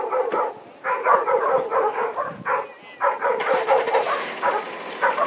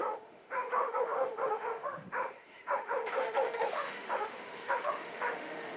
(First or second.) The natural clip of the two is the first